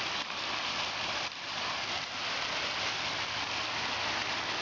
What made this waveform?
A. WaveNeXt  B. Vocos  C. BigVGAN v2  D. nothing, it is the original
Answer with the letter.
D